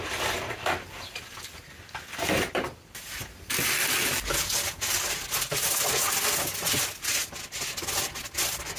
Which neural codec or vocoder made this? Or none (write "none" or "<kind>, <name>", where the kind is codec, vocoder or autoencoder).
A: none